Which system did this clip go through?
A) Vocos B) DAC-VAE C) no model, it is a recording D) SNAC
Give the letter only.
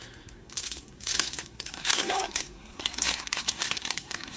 D